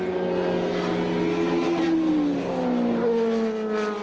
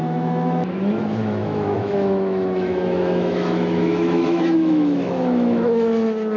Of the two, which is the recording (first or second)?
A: first